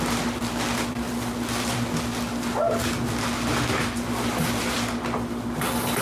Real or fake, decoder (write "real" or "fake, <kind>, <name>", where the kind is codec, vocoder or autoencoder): real